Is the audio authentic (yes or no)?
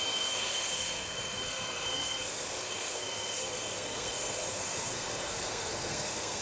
no